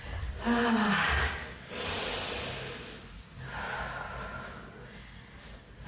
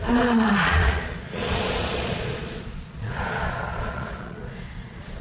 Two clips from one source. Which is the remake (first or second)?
second